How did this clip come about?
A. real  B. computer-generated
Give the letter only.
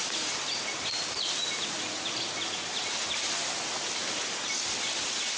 A